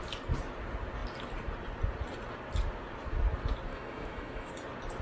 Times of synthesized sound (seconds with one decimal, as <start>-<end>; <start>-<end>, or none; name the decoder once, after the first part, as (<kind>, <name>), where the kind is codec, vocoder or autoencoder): 3.7-4.5 (autoencoder, DAC-VAE)